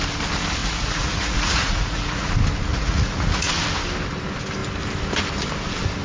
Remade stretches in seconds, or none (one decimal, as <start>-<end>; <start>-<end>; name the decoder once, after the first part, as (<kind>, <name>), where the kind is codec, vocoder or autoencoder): 0.6-2.3 (vocoder, Vocos); 2.7-3.5

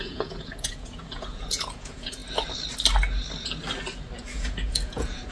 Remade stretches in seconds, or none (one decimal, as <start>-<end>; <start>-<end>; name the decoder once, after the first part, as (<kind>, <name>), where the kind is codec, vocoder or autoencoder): 0.0-2.2 (vocoder, Vocos); 4.2-5.3

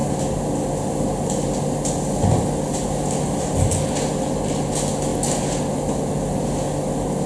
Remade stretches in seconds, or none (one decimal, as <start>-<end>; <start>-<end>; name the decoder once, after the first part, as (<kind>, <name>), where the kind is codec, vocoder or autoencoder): none

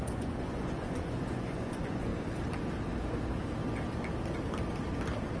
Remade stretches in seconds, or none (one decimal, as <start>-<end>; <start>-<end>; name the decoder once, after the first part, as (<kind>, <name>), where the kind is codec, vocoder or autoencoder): 0.0-2.1 (vocoder, Vocos)

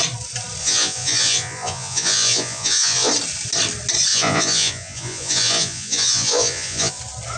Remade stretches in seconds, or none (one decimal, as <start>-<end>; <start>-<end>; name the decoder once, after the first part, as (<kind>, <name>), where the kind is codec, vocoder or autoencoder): 0.6-3.1 (vocoder, Vocos); 4.1-7.0

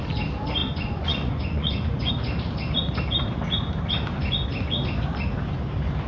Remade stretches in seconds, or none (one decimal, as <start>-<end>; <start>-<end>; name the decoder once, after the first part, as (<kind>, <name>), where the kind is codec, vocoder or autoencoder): 0.6-2.1 (vocoder, Vocos)